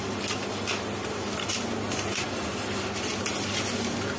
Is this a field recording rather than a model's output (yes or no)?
yes